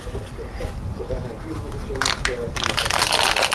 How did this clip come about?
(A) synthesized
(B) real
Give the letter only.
B